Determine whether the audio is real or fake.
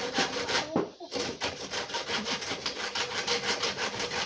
fake